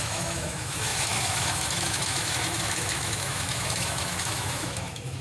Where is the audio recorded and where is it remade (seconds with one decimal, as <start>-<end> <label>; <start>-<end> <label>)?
0.0-5.2 remade